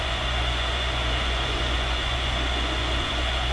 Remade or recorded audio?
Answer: remade